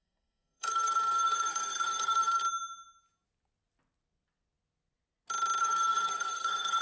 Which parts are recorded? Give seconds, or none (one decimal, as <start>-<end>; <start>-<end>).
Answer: 2.4-5.6